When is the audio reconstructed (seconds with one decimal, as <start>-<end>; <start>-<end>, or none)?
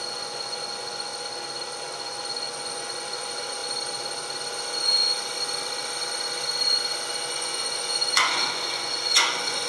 0.0-1.1; 1.8-3.6; 7.3-9.7